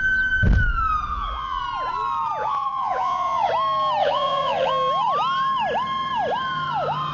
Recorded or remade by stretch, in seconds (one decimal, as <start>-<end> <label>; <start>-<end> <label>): 0.0-1.1 recorded; 1.1-1.6 remade; 1.6-2.4 recorded; 2.4-3.5 remade; 3.5-4.0 recorded; 4.0-4.7 remade; 4.7-7.1 recorded